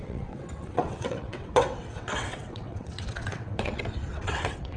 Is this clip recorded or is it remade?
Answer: remade